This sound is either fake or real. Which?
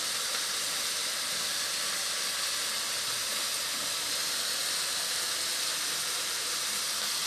real